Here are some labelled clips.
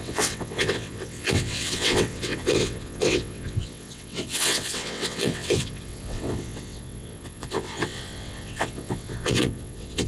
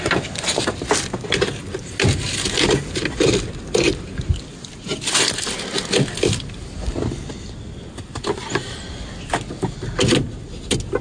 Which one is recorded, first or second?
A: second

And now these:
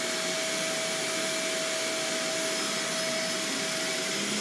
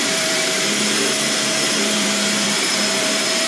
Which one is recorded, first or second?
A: first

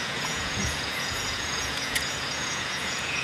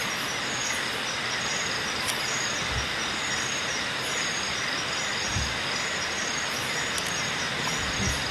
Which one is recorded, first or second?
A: second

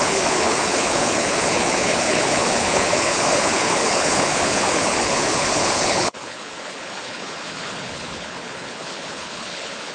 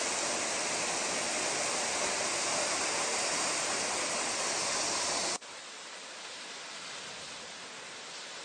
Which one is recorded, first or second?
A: second